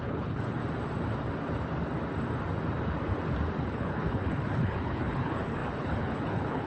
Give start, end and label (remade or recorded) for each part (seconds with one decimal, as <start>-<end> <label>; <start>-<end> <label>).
0.0-0.6 remade; 0.6-3.6 recorded; 3.6-6.7 remade